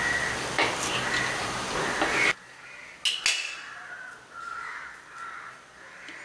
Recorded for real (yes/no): yes